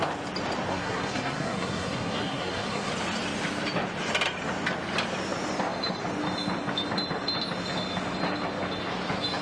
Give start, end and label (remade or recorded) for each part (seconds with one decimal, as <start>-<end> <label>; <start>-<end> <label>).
0.0-0.7 recorded; 0.7-2.9 remade; 2.9-9.4 recorded